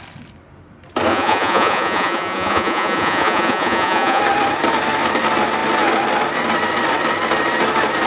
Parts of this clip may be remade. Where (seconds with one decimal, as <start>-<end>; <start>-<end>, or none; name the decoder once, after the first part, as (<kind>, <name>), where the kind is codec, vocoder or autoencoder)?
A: 1.1-4.2 (vocoder, Vocos)